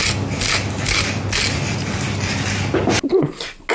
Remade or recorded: recorded